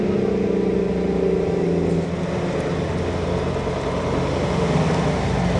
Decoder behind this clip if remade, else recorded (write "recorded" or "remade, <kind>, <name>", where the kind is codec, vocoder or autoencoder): recorded